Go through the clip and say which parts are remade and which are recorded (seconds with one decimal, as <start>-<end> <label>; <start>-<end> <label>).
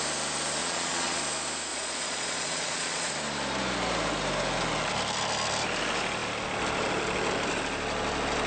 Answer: 0.0-0.6 recorded; 0.6-1.2 remade; 1.2-1.7 recorded; 1.7-3.1 remade; 3.1-8.5 recorded